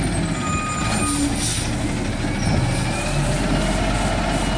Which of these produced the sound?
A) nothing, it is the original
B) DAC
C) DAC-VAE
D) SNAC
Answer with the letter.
A